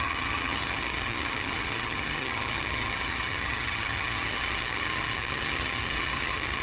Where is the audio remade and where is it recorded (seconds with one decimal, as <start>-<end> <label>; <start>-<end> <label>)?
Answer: 0.0-6.6 remade